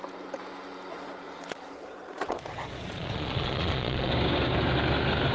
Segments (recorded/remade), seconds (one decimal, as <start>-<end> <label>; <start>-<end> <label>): 0.0-0.9 recorded; 0.9-4.1 remade; 4.1-5.3 recorded